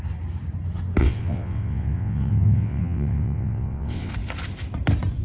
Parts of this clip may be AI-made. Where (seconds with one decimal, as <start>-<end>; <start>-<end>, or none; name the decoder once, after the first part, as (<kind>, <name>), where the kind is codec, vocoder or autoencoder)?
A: 1.0-4.1 (vocoder, WaveNeXt)